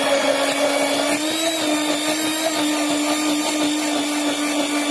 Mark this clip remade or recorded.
recorded